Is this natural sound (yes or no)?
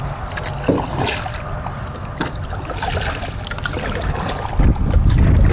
yes